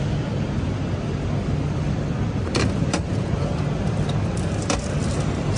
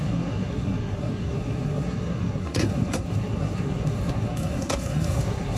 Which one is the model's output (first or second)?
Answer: second